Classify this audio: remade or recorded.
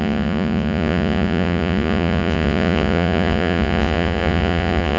remade